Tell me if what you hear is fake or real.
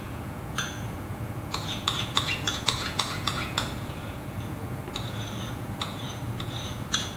fake